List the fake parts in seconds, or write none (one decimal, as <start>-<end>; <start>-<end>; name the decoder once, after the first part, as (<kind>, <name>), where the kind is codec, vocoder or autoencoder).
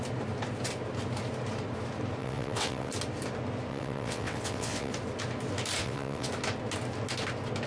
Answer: 2.2-2.9 (vocoder, WaveNeXt); 3.7-4.9; 5.8-6.3